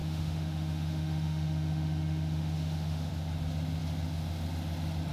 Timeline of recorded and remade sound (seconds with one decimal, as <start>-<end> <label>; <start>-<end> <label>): 0.0-3.1 remade; 3.1-5.1 recorded